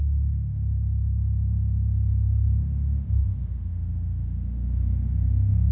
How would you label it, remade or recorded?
remade